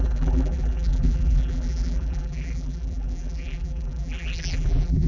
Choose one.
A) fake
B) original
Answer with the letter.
A